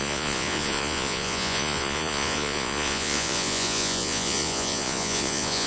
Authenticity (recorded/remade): remade